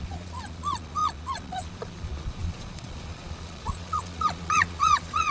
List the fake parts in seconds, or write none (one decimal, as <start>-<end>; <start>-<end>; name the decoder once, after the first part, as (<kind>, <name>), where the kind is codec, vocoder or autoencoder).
0.0-5.3 (vocoder, Vocos)